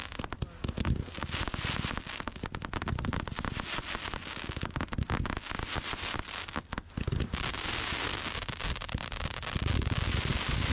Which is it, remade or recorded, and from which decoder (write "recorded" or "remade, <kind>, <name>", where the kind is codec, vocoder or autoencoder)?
recorded